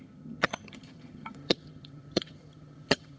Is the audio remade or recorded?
remade